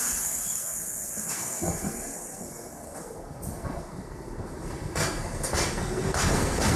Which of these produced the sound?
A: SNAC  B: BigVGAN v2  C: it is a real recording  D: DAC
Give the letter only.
A